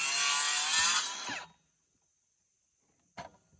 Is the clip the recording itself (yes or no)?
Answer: yes